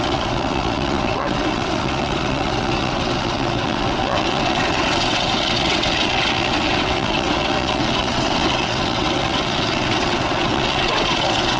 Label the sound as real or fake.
fake